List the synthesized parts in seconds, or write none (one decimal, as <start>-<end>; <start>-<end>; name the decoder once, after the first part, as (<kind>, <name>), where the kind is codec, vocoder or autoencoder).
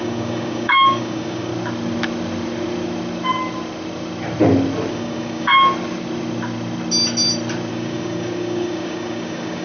0.0-1.5 (codec, DAC); 4.9-5.5; 7.7-9.6